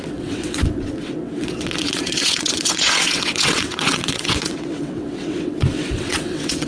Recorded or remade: remade